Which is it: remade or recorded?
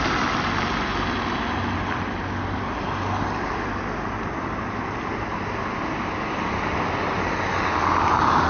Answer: recorded